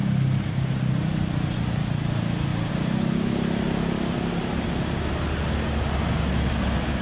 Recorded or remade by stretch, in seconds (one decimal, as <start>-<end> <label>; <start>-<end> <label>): 0.0-7.0 recorded